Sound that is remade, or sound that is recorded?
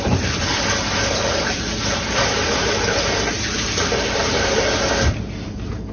remade